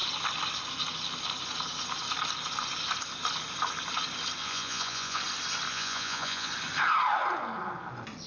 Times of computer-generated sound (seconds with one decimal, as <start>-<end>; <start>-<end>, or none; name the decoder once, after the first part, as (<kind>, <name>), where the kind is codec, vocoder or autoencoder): 4.4-5.2 (vocoder, Vocos); 5.7-6.5